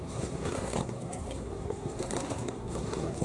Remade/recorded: remade